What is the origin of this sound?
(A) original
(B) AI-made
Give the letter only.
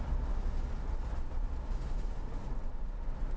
A